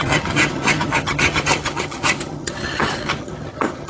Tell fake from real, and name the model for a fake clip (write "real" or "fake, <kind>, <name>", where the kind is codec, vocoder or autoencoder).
fake, vocoder, HiFi-GAN